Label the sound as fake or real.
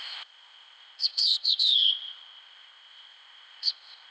fake